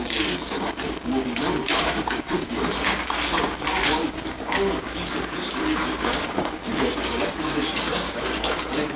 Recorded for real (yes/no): no